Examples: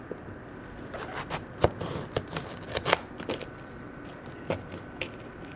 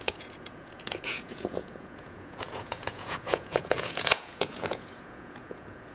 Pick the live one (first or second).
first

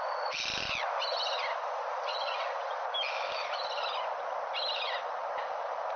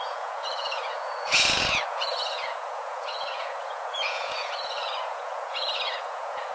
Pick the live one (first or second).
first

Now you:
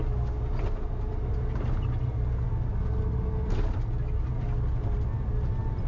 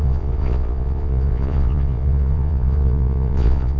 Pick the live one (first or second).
first